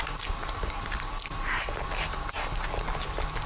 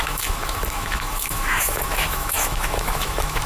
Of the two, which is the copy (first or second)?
second